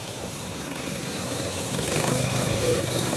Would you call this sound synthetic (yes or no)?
yes